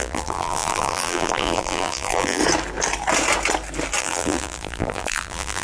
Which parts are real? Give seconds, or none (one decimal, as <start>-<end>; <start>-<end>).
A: 2.4-4.0